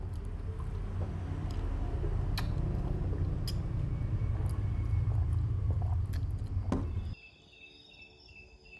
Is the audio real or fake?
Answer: real